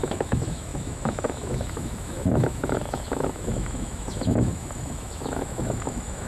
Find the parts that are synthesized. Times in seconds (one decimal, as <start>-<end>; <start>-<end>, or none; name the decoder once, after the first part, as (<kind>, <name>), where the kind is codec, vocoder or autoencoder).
0.0-6.3 (autoencoder, DAC-VAE)

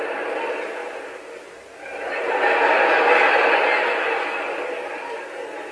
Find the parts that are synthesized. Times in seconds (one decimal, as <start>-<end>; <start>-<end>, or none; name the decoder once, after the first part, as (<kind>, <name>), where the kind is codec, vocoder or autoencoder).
none

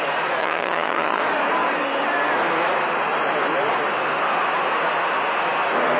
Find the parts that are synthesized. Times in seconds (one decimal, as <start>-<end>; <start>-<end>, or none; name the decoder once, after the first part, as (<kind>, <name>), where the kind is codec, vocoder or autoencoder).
0.4-1.2 (vocoder, HiFi-GAN)

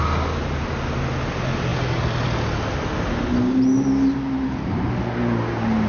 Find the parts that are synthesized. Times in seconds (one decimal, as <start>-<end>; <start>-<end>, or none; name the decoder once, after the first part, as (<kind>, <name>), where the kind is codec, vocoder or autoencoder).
none

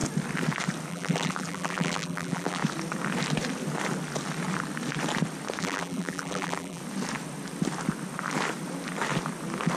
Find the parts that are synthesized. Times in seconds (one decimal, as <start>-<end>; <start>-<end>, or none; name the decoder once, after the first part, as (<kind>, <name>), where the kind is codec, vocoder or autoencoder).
0.9-2.6 (vocoder, BigVGAN v2); 5.6-6.8

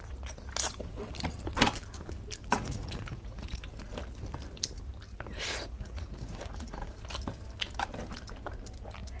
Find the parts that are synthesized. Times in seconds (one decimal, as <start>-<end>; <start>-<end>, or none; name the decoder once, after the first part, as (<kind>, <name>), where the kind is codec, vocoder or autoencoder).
2.4-3.7 (vocoder, Vocos); 5.1-7.0

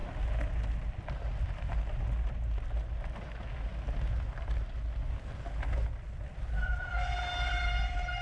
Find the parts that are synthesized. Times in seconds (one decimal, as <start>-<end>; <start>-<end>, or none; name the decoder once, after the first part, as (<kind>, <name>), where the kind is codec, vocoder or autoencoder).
none